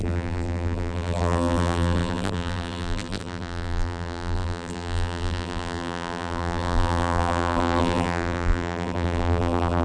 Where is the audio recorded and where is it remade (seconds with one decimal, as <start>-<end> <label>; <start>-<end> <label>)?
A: 0.0-9.8 remade